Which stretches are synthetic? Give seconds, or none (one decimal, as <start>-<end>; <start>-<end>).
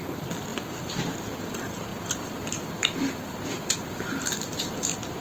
0.5-1.1; 1.9-5.2